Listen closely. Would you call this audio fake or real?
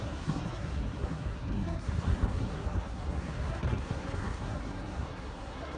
fake